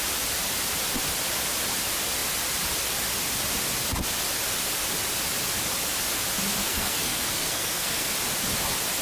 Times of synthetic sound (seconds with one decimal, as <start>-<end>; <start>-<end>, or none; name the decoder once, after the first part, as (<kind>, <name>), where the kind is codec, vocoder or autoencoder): 6.6-8.1 (codec, SNAC)